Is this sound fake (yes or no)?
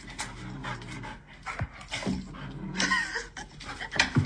no